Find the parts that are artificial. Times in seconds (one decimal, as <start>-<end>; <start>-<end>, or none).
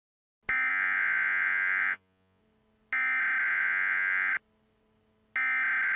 0.7-2.4; 3.5-4.3